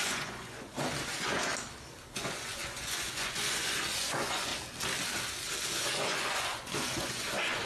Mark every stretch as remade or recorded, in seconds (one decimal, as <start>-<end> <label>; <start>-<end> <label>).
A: 0.0-1.5 remade; 1.5-2.1 recorded; 2.1-4.5 remade; 4.5-5.8 recorded; 5.8-7.7 remade